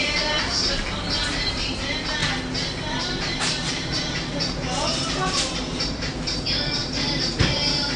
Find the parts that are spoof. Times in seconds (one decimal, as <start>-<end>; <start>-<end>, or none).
0.0-2.2; 2.9-8.0